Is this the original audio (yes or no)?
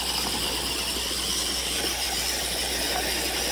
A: yes